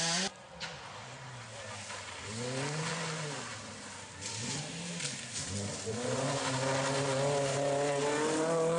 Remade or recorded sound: recorded